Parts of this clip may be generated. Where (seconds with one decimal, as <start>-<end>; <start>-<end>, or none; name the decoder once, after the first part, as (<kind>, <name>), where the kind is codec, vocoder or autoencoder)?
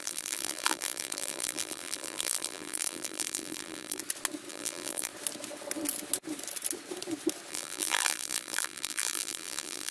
0.0-4.0 (vocoder, BigVGAN v2); 4.5-5.1; 7.5-9.9